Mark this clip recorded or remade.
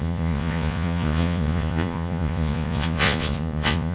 remade